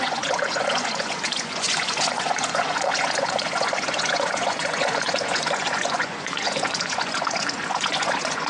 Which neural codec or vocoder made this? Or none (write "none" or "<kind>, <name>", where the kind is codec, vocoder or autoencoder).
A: vocoder, Vocos